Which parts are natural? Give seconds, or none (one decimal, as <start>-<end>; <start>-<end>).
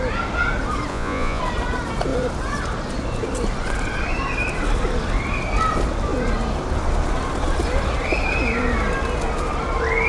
0.0-0.9; 1.4-10.1